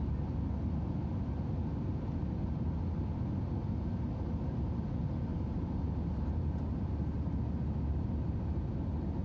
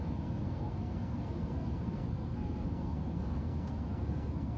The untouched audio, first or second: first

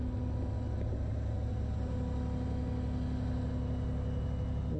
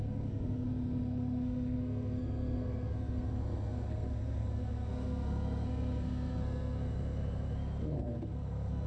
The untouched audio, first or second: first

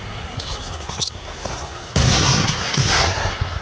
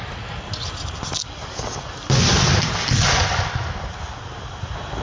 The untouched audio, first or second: second